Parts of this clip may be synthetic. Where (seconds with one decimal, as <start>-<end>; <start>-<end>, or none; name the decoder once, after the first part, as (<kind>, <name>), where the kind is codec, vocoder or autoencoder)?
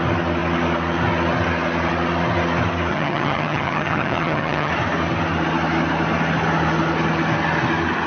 2.9-4.7 (vocoder, HiFi-GAN)